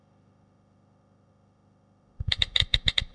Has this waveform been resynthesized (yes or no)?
yes